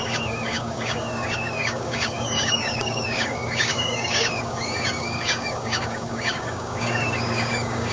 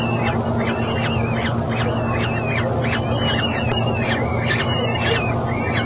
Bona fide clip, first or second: second